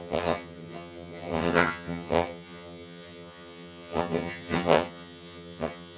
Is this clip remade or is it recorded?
remade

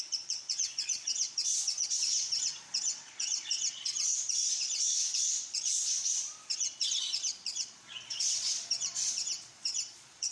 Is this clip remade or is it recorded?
remade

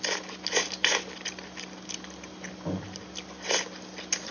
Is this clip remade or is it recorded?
recorded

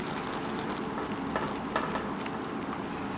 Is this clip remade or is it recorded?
recorded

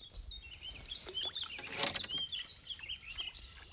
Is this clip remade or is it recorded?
remade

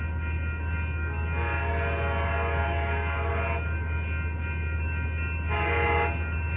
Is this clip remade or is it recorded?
recorded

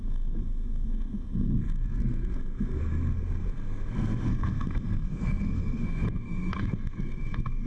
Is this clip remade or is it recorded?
remade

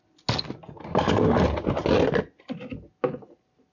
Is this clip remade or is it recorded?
recorded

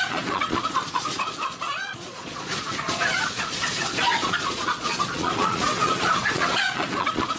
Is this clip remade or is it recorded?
remade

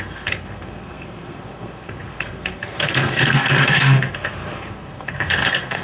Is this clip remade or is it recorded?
remade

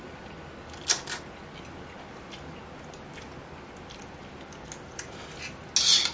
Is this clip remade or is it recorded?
recorded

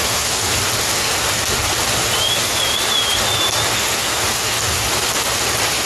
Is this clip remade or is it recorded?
recorded